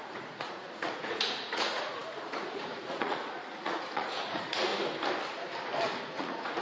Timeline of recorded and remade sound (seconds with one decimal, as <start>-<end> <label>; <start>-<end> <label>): 0.0-4.7 remade; 4.7-6.0 recorded; 6.0-6.6 remade